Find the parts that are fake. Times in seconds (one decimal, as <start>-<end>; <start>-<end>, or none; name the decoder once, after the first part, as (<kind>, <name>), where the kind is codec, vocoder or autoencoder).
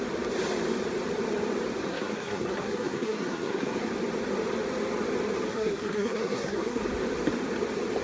1.9-3.9 (codec, SNAC); 5.5-6.8